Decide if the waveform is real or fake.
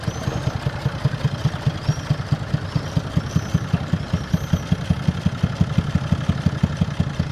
real